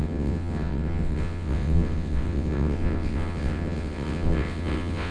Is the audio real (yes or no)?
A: no